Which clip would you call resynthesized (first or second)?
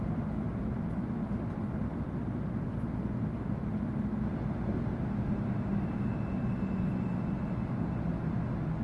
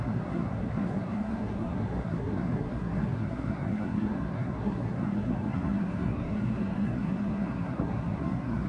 second